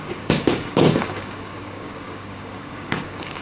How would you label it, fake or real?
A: fake